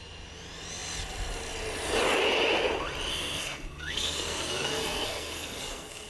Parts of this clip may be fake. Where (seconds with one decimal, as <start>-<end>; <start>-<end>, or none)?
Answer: 3.1-6.1